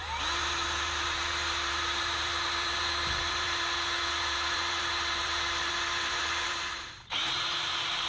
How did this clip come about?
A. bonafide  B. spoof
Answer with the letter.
B